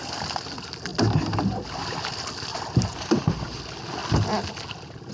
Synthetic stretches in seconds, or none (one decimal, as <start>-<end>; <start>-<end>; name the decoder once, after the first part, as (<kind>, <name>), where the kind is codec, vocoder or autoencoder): 2.5-3.6 (vocoder, BigVGAN v2)